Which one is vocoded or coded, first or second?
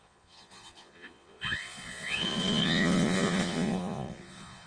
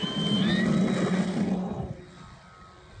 first